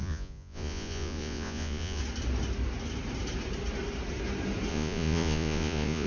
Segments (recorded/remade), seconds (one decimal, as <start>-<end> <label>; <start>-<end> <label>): 0.0-2.0 remade; 2.0-4.7 recorded; 4.7-6.1 remade